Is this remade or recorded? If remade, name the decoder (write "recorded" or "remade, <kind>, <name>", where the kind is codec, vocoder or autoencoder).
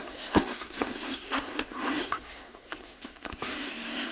remade, codec, SNAC